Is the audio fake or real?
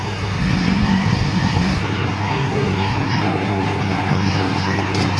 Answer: fake